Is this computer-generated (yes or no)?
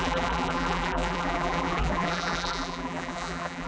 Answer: yes